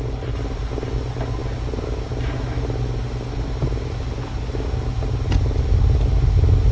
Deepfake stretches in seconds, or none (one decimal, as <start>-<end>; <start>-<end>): none